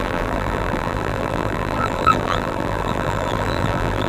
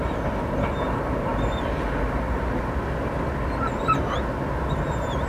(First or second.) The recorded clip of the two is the second